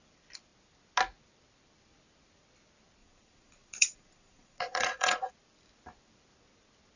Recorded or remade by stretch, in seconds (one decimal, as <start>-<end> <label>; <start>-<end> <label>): 0.0-3.0 recorded; 3.0-5.3 remade; 5.3-7.0 recorded